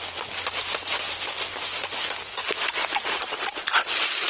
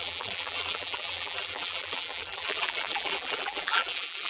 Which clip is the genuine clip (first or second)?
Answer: first